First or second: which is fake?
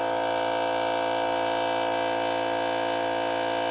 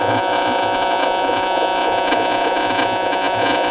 second